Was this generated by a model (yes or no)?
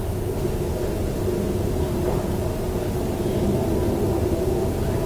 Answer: no